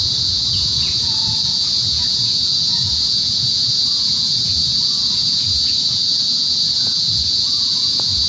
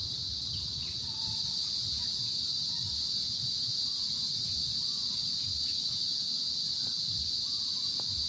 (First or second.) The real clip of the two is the second